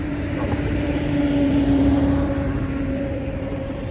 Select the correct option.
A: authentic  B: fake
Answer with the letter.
B